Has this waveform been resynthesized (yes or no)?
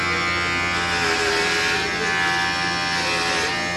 no